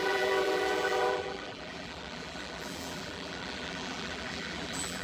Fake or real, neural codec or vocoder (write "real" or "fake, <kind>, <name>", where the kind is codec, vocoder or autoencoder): fake, vocoder, BigVGAN v2